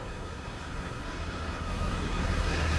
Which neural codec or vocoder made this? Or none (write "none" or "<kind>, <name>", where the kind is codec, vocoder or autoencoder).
codec, SNAC